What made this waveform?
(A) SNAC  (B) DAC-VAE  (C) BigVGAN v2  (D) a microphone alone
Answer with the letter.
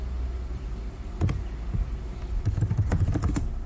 D